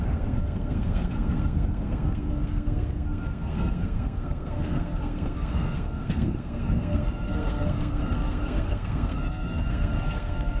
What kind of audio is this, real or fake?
fake